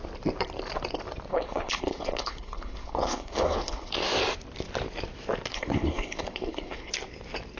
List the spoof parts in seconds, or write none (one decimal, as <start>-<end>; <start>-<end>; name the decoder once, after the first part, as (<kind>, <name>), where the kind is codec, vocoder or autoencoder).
1.3-3.9 (codec, HILCodec); 5.5-6.9